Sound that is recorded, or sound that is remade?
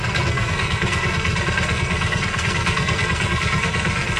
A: remade